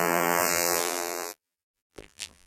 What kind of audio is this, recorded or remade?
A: remade